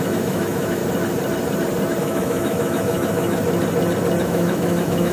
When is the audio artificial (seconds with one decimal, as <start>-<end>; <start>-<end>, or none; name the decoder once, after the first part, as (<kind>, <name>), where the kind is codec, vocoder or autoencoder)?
0.0-0.8 (autoencoder, DAC-VAE); 2.0-3.4; 4.2-5.1